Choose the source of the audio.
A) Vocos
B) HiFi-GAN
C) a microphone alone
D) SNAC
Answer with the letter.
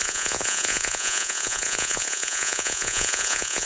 A